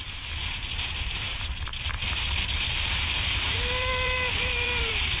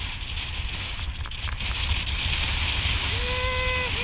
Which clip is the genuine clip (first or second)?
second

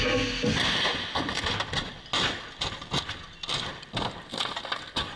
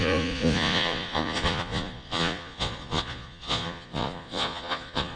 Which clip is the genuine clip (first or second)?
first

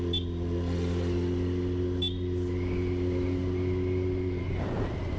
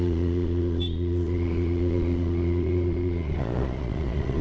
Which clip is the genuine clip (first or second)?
first